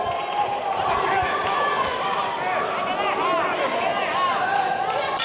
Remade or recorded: recorded